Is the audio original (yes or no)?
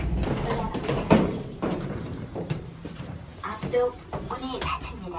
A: no